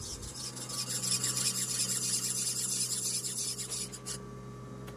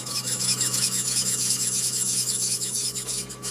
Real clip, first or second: first